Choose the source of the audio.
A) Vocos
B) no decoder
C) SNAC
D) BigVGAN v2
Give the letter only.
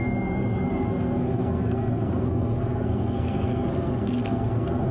C